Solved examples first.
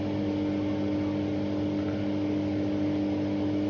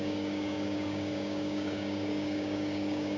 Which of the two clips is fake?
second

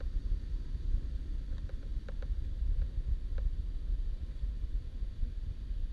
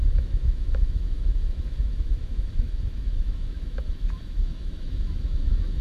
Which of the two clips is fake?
second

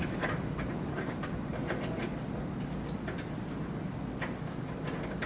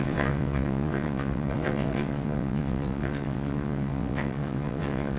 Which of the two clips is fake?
second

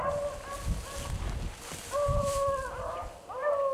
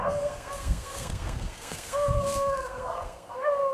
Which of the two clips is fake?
second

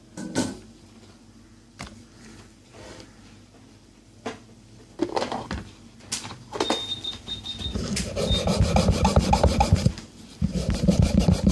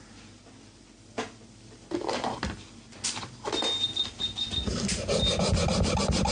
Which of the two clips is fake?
first